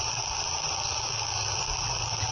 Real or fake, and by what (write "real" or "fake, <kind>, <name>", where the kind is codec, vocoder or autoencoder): fake, vocoder, BigVGAN v2